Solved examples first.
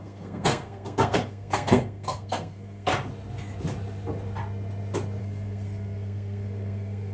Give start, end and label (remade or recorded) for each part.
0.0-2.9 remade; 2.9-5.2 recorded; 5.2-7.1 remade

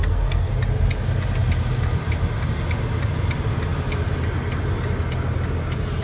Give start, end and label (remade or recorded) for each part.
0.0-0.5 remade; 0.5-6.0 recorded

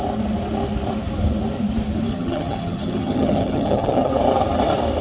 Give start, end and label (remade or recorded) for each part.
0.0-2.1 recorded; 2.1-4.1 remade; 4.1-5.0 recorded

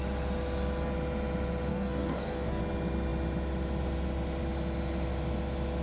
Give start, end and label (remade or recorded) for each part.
0.0-1.7 recorded; 1.7-2.6 remade; 2.6-5.8 recorded